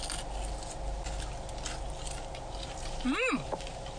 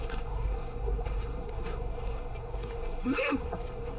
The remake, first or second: second